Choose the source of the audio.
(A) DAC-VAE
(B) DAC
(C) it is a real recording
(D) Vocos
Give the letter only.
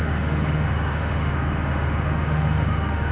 A